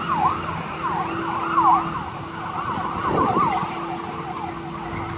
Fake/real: real